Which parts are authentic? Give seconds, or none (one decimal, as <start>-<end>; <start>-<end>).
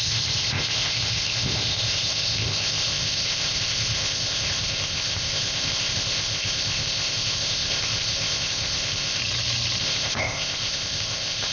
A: 9.2-9.8